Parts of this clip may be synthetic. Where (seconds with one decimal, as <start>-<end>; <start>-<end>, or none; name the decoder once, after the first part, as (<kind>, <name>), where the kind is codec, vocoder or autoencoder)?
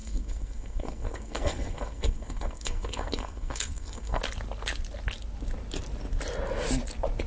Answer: 0.0-4.2 (codec, SNAC)